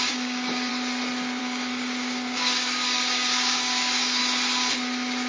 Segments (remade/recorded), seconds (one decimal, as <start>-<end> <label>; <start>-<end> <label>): 0.0-0.7 remade; 0.7-1.4 recorded; 1.4-4.2 remade; 4.2-5.3 recorded